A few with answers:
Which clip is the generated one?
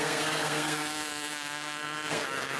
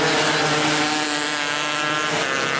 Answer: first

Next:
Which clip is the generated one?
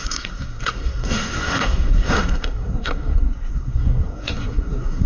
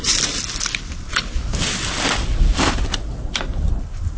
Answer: first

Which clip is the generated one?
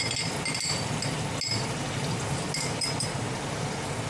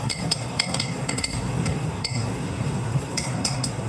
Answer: second